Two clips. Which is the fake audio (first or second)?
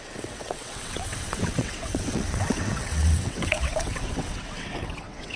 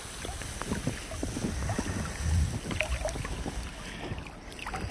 first